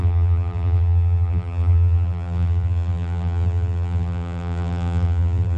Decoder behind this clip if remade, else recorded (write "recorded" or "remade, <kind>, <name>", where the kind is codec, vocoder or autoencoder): remade, vocoder, BigVGAN v2